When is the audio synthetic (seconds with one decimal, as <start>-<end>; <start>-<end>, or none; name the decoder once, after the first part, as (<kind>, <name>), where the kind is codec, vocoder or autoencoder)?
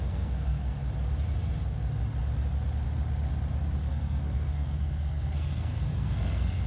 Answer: 0.0-0.8 (codec, SNAC); 3.8-6.7